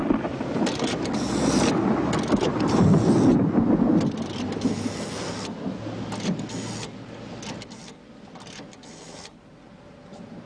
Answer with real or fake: real